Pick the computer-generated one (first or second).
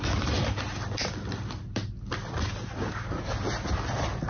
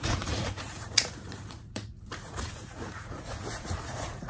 second